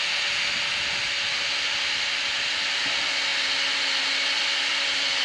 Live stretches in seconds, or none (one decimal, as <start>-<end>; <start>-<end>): 0.0-5.2